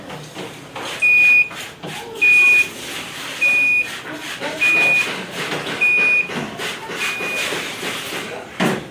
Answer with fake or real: real